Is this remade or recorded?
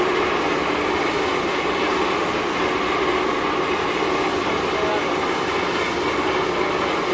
recorded